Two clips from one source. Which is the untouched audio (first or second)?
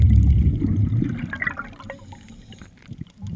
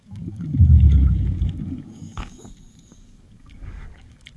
first